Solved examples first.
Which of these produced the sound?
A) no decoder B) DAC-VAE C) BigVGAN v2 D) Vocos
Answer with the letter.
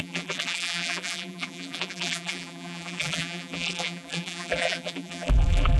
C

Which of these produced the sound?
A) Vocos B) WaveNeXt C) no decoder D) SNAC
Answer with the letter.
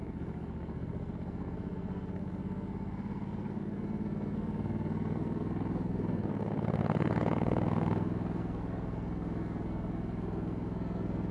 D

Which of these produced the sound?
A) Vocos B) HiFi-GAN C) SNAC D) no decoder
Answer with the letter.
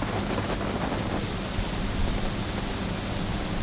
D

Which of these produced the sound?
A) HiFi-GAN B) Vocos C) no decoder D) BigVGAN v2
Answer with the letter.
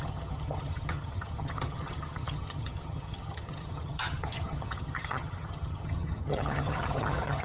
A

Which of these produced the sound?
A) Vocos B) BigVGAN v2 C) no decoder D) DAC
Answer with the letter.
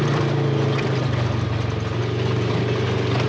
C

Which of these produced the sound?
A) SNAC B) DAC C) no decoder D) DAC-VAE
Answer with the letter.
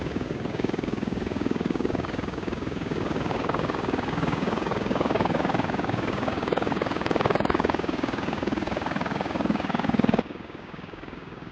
B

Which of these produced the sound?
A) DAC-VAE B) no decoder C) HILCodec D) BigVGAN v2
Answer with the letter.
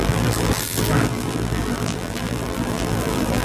D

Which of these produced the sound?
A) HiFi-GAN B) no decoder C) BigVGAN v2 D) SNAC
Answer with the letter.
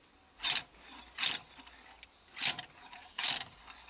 B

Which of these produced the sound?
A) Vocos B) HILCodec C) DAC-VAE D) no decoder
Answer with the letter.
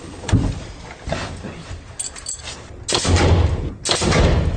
D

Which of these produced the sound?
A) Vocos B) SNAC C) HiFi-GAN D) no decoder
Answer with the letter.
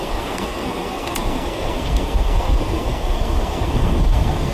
B